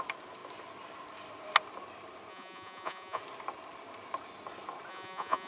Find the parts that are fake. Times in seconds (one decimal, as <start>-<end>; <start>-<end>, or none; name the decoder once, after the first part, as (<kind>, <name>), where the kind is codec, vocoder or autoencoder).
2.3-3.2 (vocoder, Vocos); 4.9-5.5

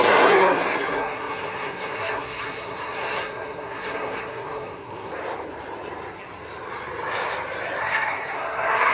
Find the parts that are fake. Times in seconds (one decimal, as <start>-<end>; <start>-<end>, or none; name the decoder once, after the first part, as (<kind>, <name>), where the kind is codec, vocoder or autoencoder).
0.0-5.1 (codec, SNAC); 7.8-8.9